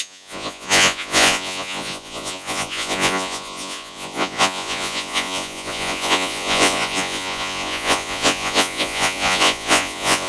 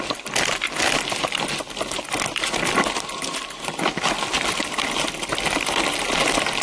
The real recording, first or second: second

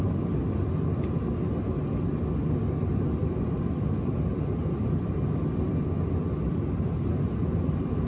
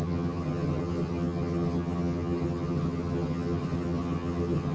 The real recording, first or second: first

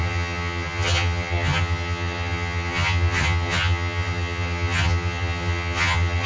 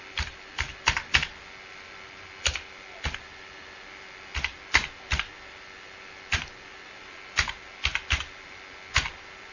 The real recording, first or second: second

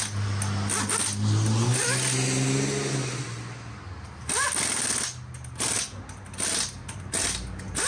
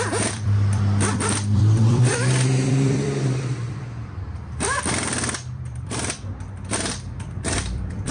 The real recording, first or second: first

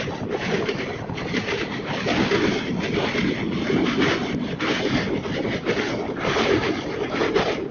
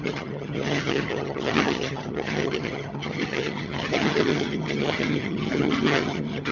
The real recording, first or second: first